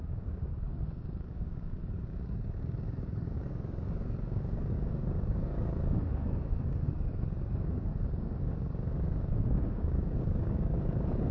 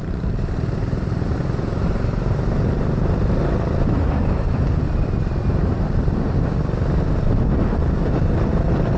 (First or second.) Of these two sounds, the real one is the second